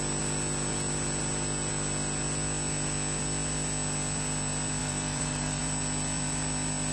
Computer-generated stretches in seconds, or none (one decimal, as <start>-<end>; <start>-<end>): 4.8-5.6

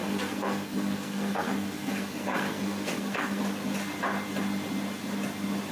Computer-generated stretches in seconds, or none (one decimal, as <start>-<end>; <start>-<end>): 0.0-3.4

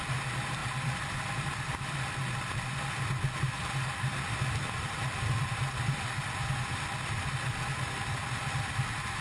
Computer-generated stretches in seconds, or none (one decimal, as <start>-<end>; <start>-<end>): none

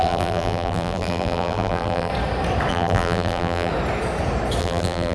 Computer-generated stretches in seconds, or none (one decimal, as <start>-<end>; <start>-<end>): 0.0-2.1; 2.7-3.7; 4.6-5.1

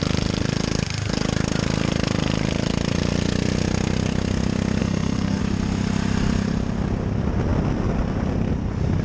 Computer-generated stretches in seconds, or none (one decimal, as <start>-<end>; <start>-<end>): 4.8-5.4

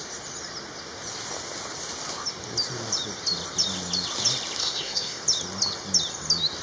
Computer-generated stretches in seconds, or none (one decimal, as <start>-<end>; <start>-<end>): 4.6-5.2

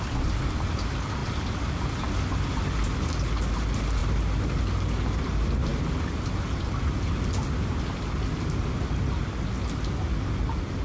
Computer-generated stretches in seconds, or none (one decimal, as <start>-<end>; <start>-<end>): none